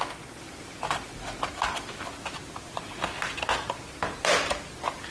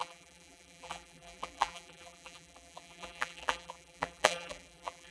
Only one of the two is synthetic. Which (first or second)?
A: second